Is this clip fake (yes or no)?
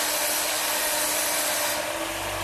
no